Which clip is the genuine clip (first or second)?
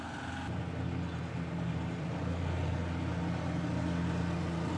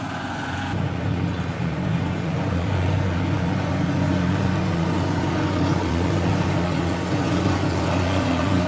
first